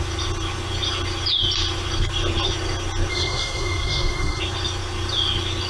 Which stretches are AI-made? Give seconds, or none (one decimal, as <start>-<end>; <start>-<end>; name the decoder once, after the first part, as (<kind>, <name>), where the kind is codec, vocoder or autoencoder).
3.1-4.4 (codec, SNAC)